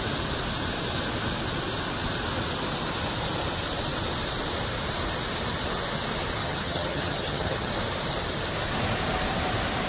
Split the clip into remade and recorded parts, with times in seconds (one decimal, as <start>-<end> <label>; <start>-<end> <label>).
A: 0.0-6.4 recorded; 6.4-7.7 remade; 7.7-9.9 recorded